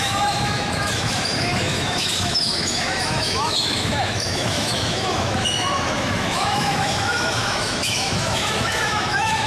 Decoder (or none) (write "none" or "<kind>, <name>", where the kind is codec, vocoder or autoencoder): autoencoder, DAC-VAE